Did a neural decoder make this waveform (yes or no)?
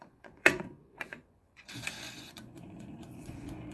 yes